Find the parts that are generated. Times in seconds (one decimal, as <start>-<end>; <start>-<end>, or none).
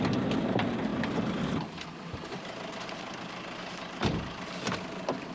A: 0.9-2.7